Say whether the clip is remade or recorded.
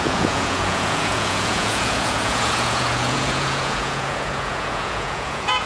remade